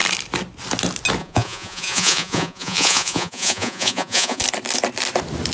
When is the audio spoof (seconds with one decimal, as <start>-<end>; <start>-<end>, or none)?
1.2-4.4